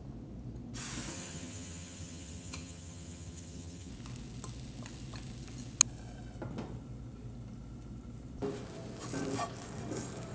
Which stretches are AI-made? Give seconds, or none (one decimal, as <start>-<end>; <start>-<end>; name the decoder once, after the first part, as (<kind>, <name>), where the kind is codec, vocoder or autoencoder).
1.1-3.9 (vocoder, HiFi-GAN)